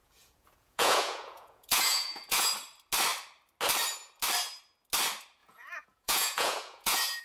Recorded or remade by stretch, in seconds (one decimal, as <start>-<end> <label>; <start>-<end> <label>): 0.0-2.5 remade; 2.5-5.4 recorded; 5.4-7.2 remade